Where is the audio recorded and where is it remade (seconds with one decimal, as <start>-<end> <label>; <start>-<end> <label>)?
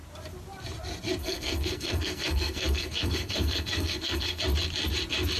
0.0-1.2 recorded; 1.2-4.4 remade; 4.4-5.4 recorded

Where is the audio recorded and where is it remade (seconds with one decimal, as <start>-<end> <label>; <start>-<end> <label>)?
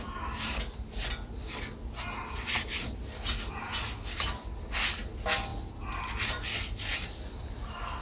0.0-8.0 recorded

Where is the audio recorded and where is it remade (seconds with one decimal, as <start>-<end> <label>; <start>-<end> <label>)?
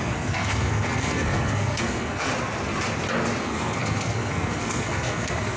0.0-2.3 remade; 2.3-3.4 recorded; 3.4-5.6 remade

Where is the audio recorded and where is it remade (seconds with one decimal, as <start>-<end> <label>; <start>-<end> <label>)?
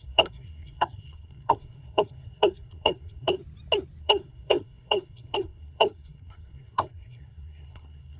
0.0-3.4 remade; 3.4-4.0 recorded; 4.0-8.2 remade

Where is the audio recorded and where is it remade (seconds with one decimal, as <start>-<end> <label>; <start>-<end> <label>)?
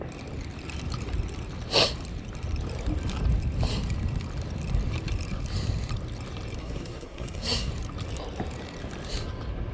0.0-6.6 recorded; 6.6-7.7 remade; 7.7-9.7 recorded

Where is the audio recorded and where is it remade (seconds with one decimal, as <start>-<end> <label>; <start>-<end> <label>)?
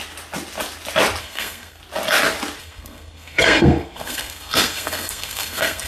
0.0-1.2 recorded; 1.2-1.8 remade; 1.8-2.6 recorded; 2.6-5.9 remade